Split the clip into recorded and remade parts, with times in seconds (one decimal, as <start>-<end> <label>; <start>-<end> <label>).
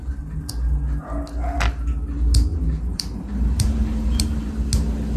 0.0-0.5 remade; 0.5-2.5 recorded; 2.5-4.5 remade; 4.5-5.2 recorded